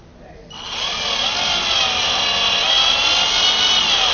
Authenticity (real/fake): real